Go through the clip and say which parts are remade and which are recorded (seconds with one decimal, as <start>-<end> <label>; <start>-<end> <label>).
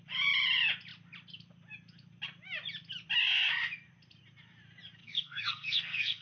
0.0-5.0 recorded; 5.0-6.2 remade